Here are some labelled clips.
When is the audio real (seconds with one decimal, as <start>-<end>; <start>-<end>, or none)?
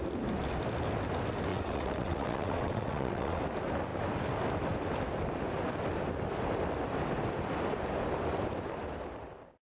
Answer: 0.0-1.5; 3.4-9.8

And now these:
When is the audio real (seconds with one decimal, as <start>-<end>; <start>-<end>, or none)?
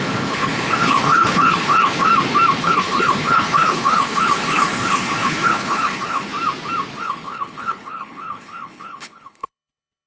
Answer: 2.1-2.6; 6.3-7.0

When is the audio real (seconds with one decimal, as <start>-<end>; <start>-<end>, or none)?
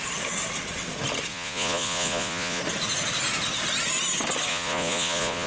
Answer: 0.0-1.3; 2.6-4.5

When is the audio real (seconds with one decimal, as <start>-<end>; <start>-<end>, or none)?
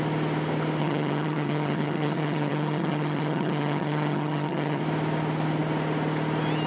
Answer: 0.0-0.8; 4.8-6.7